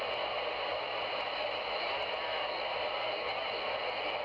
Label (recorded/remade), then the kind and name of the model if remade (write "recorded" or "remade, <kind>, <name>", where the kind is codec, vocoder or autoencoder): recorded